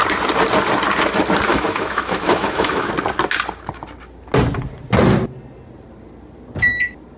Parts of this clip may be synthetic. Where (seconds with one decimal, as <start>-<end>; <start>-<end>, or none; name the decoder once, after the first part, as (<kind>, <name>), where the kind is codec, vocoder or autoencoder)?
1.5-2.9 (autoencoder, DAC-VAE)